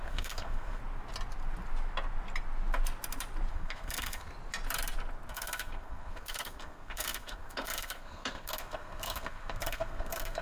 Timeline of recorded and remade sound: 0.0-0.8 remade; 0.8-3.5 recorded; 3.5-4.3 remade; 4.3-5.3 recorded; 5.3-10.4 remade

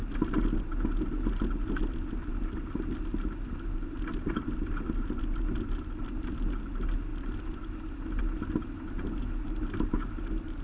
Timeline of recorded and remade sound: 0.0-10.6 recorded